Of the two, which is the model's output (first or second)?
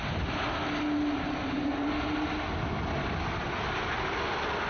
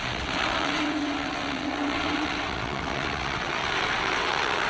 second